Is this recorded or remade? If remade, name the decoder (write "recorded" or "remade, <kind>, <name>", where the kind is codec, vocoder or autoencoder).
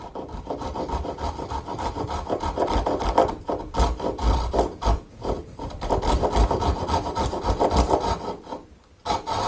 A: recorded